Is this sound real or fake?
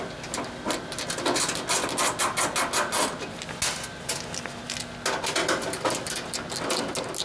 real